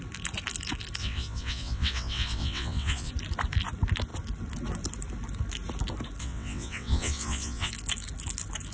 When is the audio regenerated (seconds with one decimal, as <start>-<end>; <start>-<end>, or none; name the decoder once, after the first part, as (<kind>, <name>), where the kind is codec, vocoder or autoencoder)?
1.0-3.1 (vocoder, WaveNeXt); 6.2-7.7